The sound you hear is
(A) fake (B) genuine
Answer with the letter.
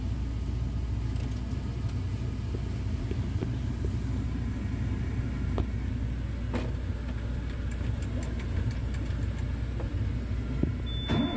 B